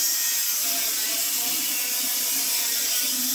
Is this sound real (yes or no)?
no